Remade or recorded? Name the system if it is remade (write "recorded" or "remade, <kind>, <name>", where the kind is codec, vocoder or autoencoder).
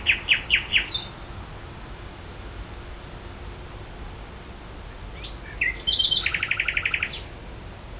recorded